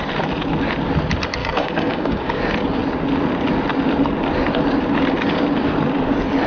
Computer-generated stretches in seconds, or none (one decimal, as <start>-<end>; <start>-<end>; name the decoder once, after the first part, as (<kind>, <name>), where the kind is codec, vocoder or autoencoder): 1.4-2.4 (codec, DAC)